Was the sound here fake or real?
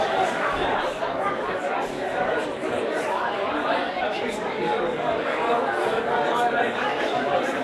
fake